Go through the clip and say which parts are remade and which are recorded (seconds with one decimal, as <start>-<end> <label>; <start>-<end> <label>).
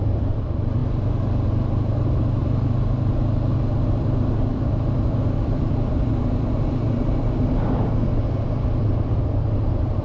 0.0-0.8 remade; 0.8-1.5 recorded; 1.5-2.4 remade; 2.4-3.9 recorded; 3.9-10.0 remade